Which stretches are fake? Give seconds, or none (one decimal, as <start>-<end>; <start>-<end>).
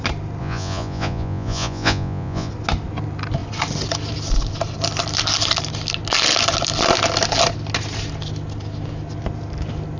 0.4-2.5